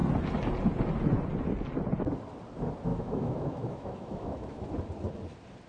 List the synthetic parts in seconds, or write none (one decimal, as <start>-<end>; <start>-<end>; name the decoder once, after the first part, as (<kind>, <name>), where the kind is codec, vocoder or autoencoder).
2.9-4.7 (autoencoder, DAC-VAE)